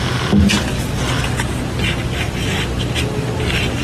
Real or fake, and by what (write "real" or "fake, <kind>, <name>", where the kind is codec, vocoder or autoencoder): real